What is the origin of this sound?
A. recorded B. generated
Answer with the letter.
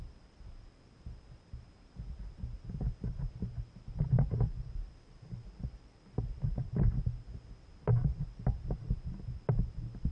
A